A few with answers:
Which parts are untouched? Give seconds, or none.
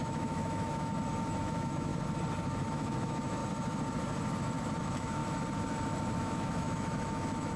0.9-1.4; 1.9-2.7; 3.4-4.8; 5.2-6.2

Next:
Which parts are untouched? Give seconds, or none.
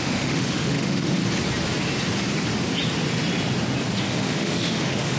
1.2-4.0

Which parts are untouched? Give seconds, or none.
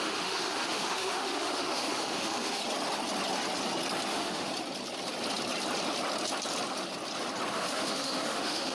2.6-4.1; 4.5-7.5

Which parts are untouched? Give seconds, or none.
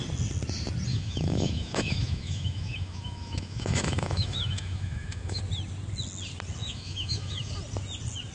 0.0-0.9; 5.4-6.6; 7.5-8.3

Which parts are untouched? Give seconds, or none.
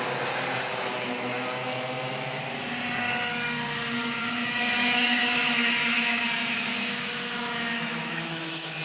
0.0-1.6; 2.4-4.2